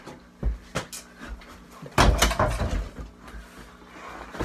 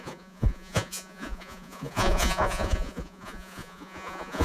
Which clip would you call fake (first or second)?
second